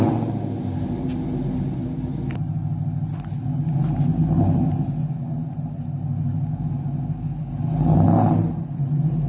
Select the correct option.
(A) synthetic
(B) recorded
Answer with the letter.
B